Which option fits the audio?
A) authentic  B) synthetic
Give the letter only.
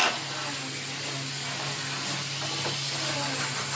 A